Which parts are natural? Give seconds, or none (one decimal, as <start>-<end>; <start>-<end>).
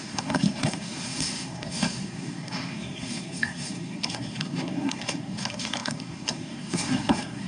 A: none